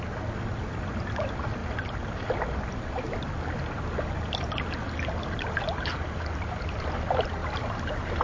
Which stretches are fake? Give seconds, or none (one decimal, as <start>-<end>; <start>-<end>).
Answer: none